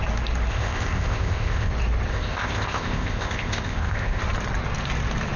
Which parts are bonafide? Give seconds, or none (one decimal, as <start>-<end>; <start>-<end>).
0.0-0.5; 1.7-2.1; 4.2-5.4